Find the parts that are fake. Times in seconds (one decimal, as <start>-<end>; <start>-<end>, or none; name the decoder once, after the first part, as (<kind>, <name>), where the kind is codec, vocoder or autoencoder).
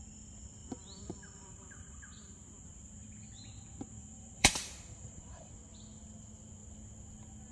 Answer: 0.6-2.3 (vocoder, BigVGAN v2); 4.0-5.5